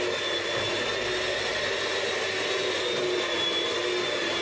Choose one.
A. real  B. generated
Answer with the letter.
A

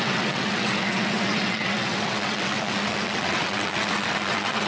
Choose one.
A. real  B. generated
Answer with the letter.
B